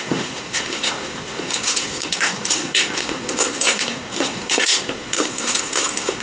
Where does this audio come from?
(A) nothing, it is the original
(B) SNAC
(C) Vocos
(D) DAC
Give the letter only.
B